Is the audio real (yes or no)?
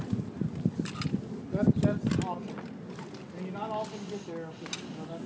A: yes